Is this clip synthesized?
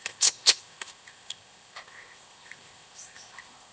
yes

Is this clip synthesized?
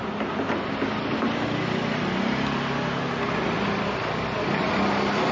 no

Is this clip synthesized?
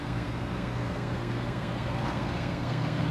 yes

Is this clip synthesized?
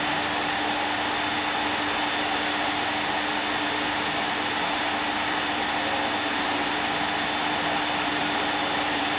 no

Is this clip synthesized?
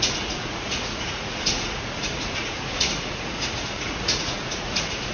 yes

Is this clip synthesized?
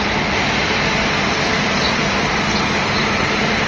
no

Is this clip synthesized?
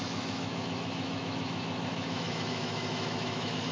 yes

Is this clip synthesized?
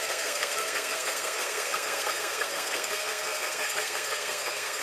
yes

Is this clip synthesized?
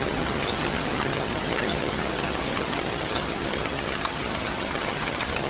yes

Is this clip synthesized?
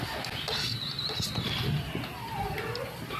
no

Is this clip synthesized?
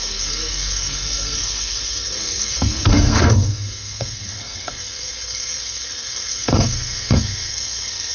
yes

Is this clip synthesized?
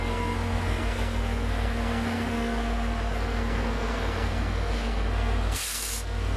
yes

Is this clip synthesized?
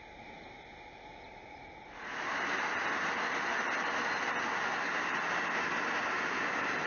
no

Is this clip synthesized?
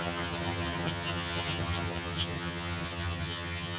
yes